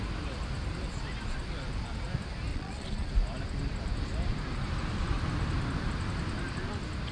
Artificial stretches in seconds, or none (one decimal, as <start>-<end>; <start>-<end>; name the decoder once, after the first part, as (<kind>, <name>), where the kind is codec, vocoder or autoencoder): 2.5-3.1 (vocoder, Vocos)